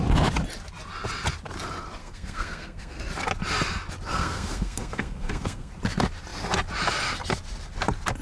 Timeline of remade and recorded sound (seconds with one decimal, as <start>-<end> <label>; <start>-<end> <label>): 0.0-2.0 recorded; 2.0-3.0 remade; 3.0-4.1 recorded; 4.1-5.7 remade; 5.7-8.2 recorded